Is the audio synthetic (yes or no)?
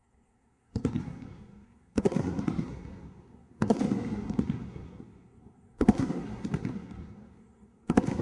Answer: yes